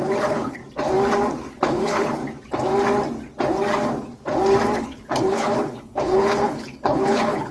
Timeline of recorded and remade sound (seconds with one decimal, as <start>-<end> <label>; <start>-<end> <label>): 0.0-0.6 remade; 0.6-1.5 recorded; 1.5-2.2 remade; 2.2-4.8 recorded; 4.8-7.5 remade